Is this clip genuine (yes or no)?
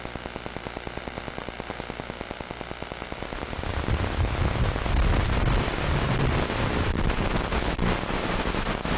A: yes